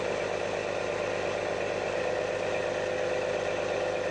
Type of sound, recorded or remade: recorded